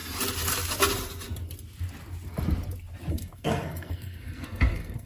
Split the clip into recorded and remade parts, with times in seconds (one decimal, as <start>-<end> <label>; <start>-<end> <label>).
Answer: 0.0-3.1 recorded; 3.1-5.1 remade